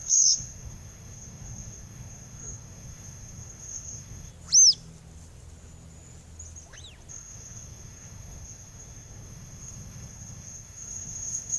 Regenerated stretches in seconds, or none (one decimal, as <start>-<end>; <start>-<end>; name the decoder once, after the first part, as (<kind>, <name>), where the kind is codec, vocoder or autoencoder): 0.0-4.3 (codec, SNAC); 7.1-11.6